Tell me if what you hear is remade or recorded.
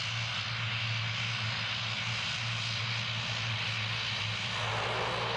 recorded